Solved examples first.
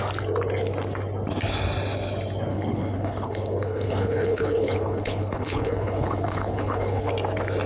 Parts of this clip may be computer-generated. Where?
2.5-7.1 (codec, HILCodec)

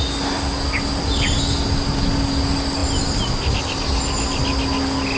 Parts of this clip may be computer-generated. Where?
none

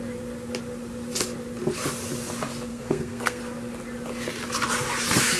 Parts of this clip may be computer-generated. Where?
2.7-3.4 (codec, SNAC)

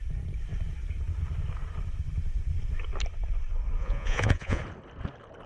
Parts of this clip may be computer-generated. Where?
3.8-4.6 (vocoder, Vocos)

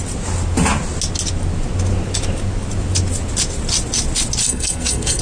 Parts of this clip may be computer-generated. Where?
4.4-5.2 (codec, SNAC)